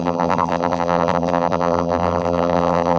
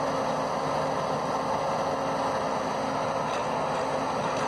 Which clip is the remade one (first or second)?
first